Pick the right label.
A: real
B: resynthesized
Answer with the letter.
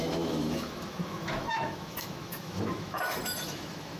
B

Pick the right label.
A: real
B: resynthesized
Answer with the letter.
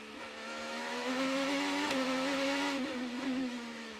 B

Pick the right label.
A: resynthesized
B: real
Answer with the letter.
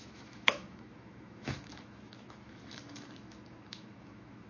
A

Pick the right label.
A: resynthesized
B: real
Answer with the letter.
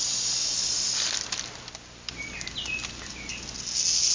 B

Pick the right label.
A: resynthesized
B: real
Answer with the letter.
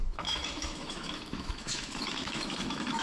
A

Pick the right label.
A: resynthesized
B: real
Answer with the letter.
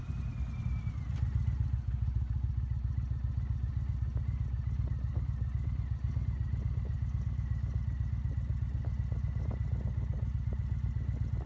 B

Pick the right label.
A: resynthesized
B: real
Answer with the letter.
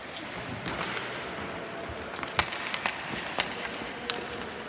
B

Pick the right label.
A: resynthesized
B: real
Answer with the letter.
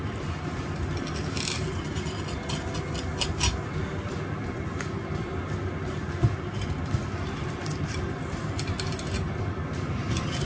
B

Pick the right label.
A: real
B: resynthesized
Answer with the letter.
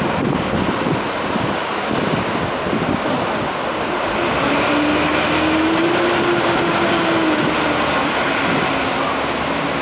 A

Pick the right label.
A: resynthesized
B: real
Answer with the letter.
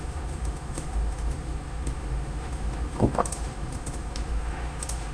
A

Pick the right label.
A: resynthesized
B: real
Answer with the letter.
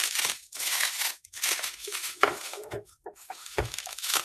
A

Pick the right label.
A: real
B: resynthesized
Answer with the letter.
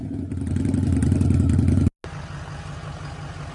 A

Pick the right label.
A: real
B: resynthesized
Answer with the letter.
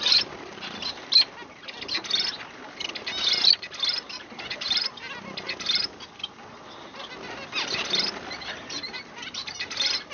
A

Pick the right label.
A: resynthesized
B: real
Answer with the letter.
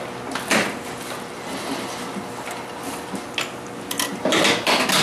B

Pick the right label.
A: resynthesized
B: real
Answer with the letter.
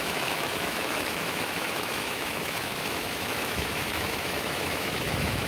A